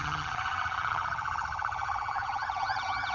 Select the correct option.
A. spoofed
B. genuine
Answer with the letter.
A